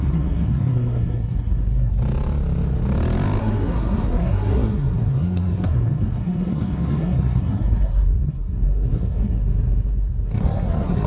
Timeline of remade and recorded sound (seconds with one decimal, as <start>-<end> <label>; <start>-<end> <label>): 0.0-1.9 remade; 1.9-3.4 recorded; 3.4-11.1 remade